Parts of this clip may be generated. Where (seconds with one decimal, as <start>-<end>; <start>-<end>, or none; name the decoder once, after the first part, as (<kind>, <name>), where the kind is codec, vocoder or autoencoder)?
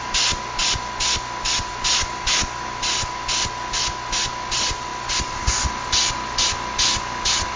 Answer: none